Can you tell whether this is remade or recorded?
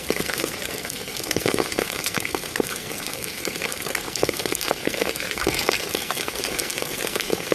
remade